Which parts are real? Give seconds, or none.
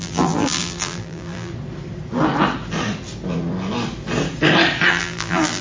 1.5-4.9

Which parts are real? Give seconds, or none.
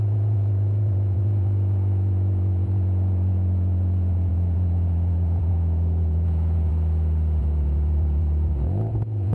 6.7-7.4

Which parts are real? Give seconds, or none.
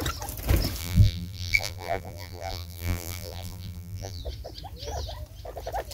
0.0-0.8; 4.2-5.9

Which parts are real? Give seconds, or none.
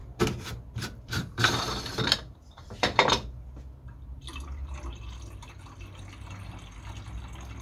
3.1-7.6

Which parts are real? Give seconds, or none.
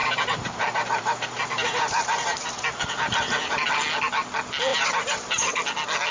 3.7-4.7; 5.5-6.1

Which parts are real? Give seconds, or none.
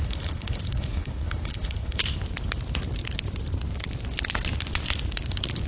2.0-5.7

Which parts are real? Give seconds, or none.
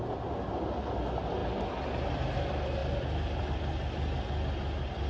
0.0-5.1